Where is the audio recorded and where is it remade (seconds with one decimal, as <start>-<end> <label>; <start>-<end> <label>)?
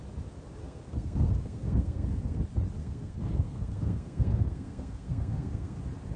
0.0-0.6 recorded; 0.6-2.4 remade; 2.4-2.8 recorded; 2.8-5.8 remade; 5.8-6.2 recorded